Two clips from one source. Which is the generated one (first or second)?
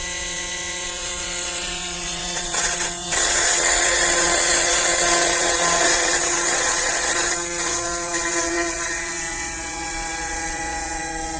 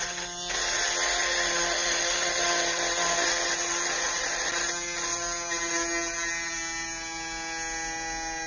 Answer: first